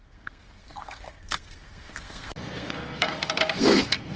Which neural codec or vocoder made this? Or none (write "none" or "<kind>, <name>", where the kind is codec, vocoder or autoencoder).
codec, SNAC